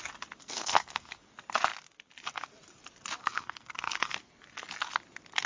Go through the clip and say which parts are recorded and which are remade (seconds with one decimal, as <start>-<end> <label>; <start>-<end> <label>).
0.0-0.4 recorded; 0.4-1.1 remade; 1.1-3.2 recorded; 3.2-4.3 remade; 4.3-5.5 recorded